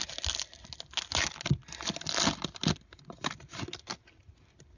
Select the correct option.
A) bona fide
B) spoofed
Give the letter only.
A